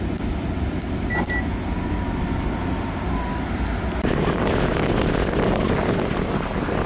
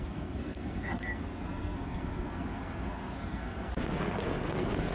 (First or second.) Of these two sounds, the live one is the first